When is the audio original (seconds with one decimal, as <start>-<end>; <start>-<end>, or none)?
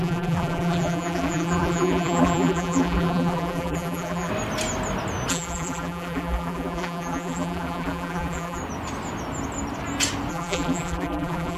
4.3-5.3; 8.6-10.3